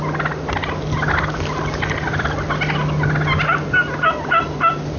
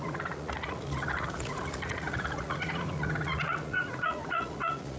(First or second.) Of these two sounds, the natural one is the first